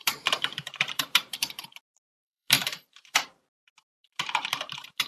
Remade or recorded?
remade